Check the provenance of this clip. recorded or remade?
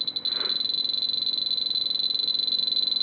recorded